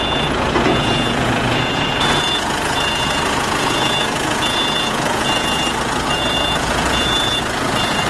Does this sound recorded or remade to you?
remade